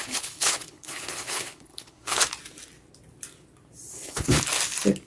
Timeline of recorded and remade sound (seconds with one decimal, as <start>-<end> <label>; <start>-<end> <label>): 0.0-2.2 remade; 2.2-3.9 recorded; 3.9-4.4 remade; 4.4-5.1 recorded